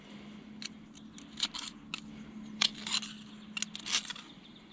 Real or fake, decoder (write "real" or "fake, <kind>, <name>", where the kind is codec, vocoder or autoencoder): real